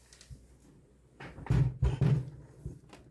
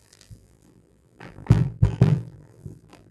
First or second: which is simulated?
second